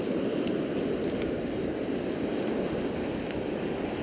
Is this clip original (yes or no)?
yes